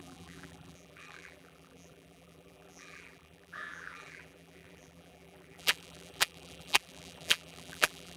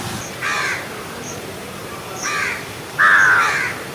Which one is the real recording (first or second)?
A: second